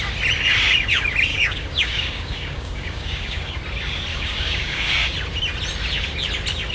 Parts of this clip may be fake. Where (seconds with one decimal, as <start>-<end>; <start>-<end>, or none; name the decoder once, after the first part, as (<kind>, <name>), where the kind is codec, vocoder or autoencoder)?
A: 1.3-3.6 (codec, DAC); 4.1-4.9